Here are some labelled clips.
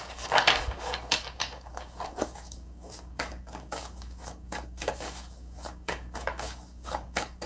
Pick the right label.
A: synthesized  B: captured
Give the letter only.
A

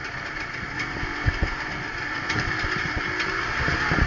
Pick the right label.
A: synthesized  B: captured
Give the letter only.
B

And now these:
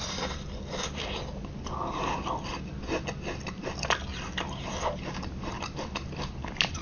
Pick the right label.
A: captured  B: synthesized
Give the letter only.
A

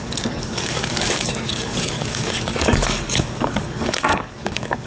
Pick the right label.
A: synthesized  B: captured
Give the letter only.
A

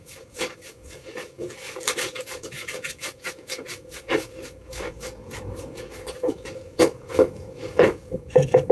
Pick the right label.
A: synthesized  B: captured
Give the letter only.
A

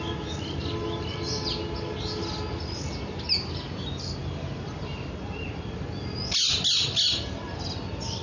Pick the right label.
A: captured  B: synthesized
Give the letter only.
A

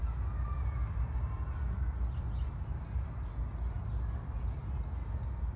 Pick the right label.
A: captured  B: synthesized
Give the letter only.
A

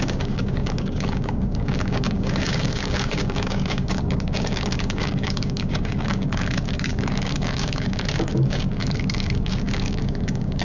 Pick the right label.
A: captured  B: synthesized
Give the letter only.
B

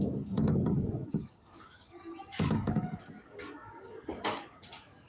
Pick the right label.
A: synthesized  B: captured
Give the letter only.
A